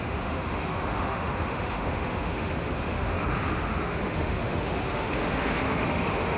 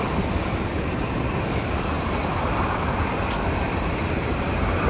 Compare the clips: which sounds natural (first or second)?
second